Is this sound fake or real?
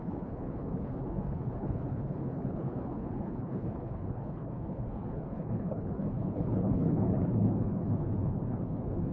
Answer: fake